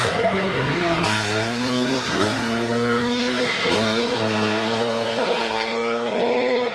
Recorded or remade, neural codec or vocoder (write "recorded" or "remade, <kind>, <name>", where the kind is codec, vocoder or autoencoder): remade, codec, SNAC